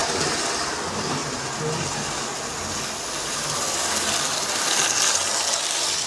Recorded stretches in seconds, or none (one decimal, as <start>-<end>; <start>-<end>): 0.0-6.1